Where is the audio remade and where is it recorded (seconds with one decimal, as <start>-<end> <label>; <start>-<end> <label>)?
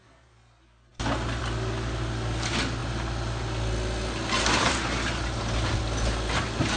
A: 0.0-6.8 recorded